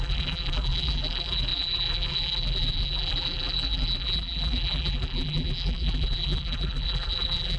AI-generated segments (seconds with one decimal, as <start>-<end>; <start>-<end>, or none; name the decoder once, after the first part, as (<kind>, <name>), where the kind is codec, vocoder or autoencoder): 0.0-7.6 (vocoder, BigVGAN v2)